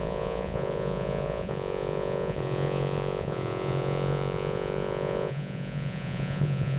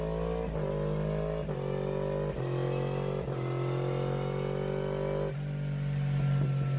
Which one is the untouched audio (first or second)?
second